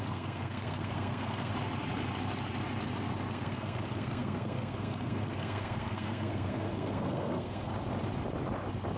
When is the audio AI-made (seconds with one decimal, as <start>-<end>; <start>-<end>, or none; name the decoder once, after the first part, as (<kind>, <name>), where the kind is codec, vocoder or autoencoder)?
0.0-1.5 (codec, SNAC); 3.3-7.7